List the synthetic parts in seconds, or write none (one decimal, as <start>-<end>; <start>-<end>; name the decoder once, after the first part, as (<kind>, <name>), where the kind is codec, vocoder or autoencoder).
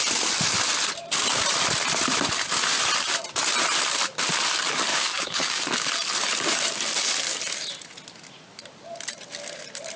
4.9-5.9 (codec, DAC)